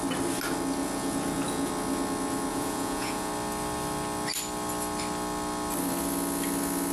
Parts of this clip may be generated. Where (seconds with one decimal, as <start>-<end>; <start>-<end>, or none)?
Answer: 0.8-1.7; 2.5-3.3